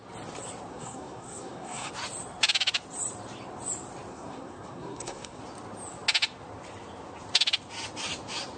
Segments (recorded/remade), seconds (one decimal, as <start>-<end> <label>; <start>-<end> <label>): 0.0-0.7 recorded; 0.7-1.9 remade; 1.9-4.1 recorded; 4.1-5.4 remade; 5.4-8.6 recorded